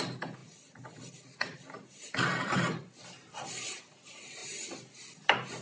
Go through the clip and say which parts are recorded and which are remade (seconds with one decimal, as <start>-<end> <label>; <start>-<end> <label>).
0.0-0.4 recorded; 0.4-3.8 remade; 3.8-5.6 recorded